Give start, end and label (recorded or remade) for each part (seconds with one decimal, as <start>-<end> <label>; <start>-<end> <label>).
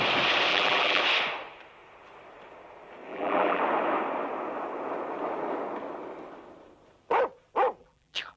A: 0.0-0.5 recorded; 0.5-1.0 remade; 1.0-3.1 recorded; 3.1-3.6 remade; 3.6-7.8 recorded; 7.8-8.4 remade